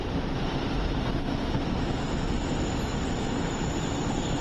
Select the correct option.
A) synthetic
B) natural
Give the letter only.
B